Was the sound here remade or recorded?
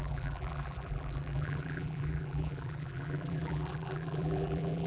remade